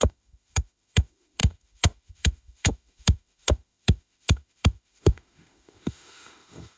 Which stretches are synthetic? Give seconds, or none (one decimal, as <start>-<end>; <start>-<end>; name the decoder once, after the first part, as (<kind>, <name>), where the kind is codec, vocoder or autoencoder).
0.0-6.8 (autoencoder, DAC-VAE)